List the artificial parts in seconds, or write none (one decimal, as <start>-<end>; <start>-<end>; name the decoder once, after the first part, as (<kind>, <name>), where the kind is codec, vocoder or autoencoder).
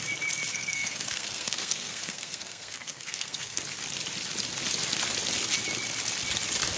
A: 0.5-3.6 (codec, SNAC)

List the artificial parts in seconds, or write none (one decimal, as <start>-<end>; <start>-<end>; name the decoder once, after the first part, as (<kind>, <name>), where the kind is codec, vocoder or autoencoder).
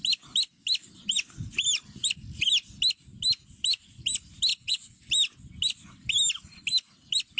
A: 4.5-5.1 (vocoder, WaveNeXt)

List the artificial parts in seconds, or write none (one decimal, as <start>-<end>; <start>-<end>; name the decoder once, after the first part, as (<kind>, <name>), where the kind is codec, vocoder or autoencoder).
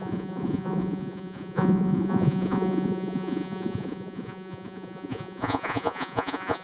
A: 0.0-6.6 (vocoder, Vocos)